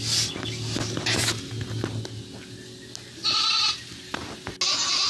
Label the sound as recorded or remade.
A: recorded